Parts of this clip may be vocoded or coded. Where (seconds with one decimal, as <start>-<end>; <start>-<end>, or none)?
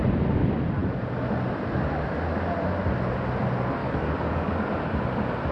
3.8-4.7